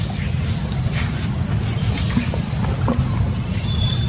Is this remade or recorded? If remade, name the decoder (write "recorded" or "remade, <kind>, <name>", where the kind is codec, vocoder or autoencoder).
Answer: recorded